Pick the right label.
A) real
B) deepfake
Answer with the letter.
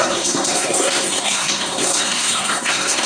B